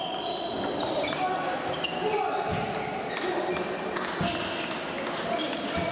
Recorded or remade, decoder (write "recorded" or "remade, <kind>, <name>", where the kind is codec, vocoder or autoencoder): recorded